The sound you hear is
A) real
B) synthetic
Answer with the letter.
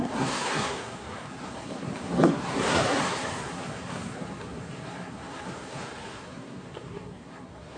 B